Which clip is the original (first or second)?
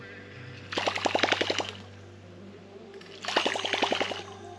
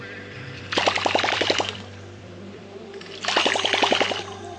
first